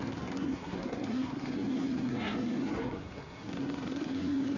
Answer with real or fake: fake